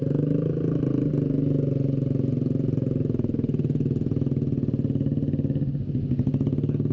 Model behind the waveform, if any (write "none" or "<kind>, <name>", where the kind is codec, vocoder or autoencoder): none